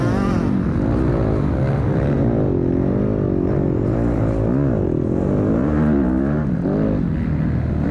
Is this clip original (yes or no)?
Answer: yes